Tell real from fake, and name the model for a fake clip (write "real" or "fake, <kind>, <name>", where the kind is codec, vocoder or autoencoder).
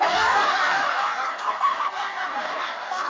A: fake, codec, DAC